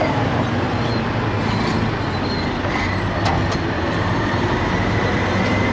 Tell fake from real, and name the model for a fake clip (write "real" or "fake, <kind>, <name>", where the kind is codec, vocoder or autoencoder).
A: real